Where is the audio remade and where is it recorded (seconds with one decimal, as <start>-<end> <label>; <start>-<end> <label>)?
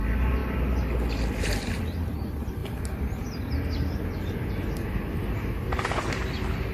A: 0.0-6.7 recorded